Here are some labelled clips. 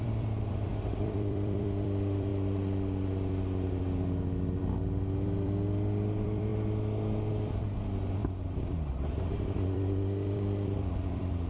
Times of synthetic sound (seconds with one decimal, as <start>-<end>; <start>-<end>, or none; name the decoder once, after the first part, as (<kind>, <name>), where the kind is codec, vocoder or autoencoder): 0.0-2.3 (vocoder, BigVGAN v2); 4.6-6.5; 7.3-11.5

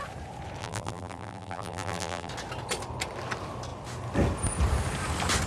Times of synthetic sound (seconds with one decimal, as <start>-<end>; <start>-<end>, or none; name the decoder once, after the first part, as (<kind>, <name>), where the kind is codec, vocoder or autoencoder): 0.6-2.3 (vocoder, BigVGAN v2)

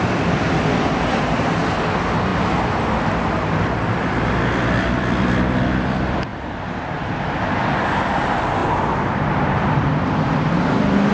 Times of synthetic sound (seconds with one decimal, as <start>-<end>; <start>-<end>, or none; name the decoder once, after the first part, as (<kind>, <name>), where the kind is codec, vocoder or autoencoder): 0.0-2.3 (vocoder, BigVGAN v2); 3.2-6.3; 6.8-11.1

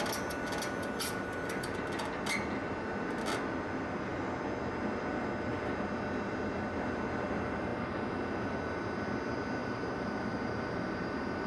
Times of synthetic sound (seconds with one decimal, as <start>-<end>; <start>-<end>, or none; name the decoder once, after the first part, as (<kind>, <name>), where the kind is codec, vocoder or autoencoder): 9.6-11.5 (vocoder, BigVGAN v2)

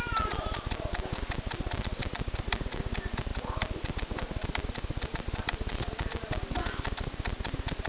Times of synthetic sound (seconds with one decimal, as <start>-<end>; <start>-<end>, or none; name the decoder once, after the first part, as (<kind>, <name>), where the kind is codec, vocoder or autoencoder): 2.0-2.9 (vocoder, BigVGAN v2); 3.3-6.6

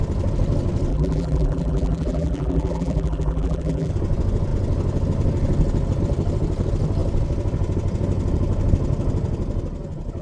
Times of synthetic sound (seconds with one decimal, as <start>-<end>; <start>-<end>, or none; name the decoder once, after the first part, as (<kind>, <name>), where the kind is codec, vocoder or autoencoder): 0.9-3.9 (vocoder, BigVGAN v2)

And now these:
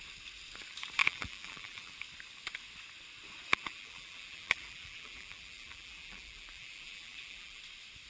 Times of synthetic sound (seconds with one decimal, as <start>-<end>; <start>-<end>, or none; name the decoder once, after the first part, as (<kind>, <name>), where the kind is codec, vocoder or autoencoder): 1.0-1.9 (vocoder, BigVGAN v2); 3.5-7.6